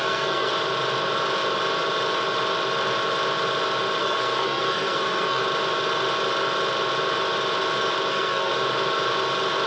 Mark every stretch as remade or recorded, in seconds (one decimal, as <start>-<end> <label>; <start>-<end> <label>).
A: 0.0-0.5 remade; 0.5-4.0 recorded; 4.0-5.4 remade; 5.4-8.1 recorded; 8.1-8.5 remade; 8.5-9.7 recorded